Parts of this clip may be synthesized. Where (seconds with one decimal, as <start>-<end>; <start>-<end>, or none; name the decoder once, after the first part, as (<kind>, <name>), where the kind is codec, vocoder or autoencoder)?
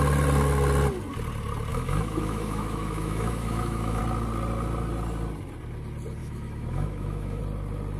1.7-4.0 (autoencoder, DAC-VAE); 6.2-7.4